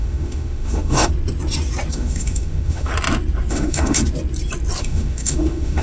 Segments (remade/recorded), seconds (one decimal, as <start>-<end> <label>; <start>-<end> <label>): 0.0-1.1 remade; 1.1-1.9 recorded; 1.9-2.9 remade; 2.9-3.5 recorded; 3.5-4.0 remade; 4.0-4.8 recorded; 4.8-5.8 remade